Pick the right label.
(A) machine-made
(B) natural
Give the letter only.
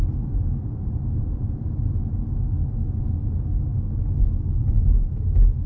B